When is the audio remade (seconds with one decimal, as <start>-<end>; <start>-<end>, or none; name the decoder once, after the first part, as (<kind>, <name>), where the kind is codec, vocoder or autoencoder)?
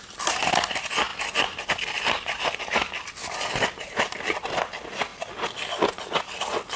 none